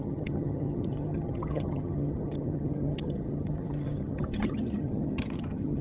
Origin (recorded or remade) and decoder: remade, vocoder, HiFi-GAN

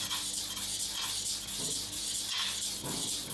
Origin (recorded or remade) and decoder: recorded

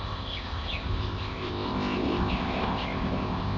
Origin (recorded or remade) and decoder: remade, codec, ZipCodec